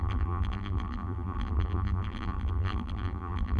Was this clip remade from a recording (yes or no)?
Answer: yes